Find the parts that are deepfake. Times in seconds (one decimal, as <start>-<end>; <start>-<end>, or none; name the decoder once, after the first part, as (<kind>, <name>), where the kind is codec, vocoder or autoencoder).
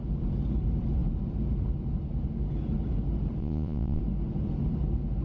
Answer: 3.4-4.0 (vocoder, Vocos)